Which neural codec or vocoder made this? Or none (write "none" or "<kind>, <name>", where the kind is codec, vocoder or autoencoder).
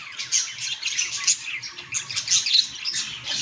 none